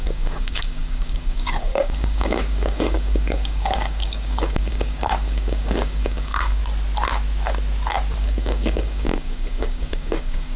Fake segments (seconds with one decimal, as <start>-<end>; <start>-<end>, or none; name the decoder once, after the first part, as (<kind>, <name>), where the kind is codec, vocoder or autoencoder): 0.0-6.6 (codec, DAC); 8.2-10.6

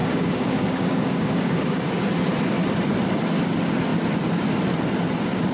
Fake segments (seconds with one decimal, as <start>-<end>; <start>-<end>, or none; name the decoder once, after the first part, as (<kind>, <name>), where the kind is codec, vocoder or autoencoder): 0.0-2.0 (codec, DAC)

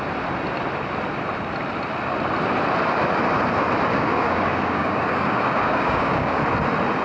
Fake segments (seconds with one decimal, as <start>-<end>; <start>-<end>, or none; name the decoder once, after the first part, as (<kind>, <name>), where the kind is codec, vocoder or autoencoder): 3.9-6.4 (codec, DAC)

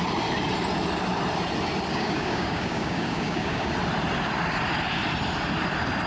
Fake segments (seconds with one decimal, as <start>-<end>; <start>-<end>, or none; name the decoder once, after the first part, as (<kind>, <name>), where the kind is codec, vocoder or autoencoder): 1.9-3.7 (codec, DAC)

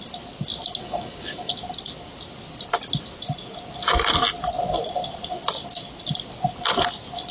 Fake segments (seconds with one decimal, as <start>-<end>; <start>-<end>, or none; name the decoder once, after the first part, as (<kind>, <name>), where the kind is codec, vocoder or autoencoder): 0.8-1.5 (codec, DAC)